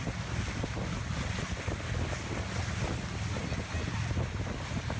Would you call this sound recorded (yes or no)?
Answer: yes